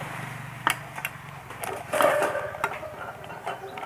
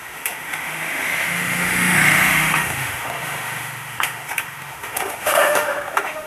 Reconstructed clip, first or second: second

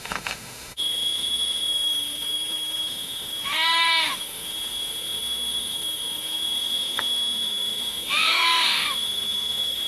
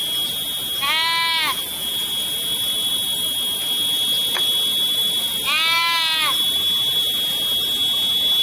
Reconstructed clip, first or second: first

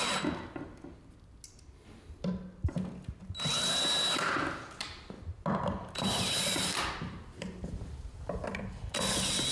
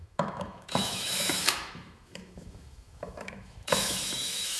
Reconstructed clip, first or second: second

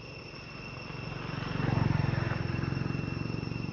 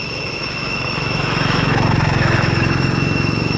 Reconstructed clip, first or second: second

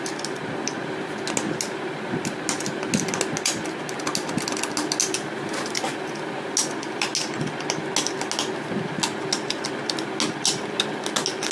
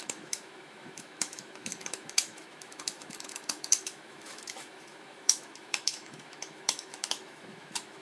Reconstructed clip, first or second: second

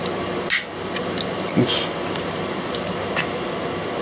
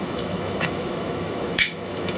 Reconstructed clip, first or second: second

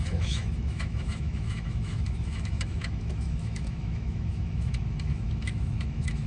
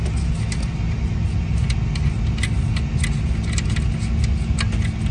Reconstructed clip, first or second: first